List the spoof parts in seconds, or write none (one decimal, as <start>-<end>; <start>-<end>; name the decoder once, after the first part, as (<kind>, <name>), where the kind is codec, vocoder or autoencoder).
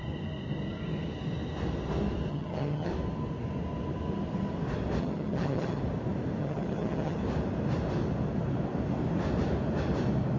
2.3-2.9 (vocoder, HiFi-GAN); 5.0-5.8; 6.4-7.2